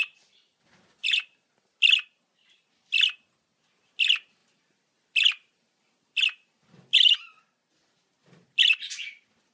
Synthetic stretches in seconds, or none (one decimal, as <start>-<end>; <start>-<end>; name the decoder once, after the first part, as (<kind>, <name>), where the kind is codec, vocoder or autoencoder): none